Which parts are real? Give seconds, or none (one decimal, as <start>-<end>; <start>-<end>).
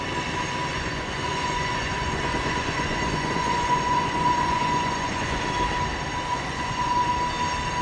0.0-0.7; 5.4-6.3; 7.1-7.8